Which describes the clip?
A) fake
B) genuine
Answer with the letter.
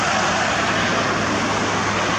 B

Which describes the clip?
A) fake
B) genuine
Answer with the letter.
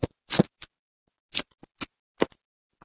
B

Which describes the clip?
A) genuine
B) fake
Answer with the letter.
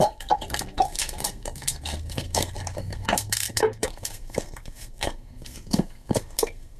B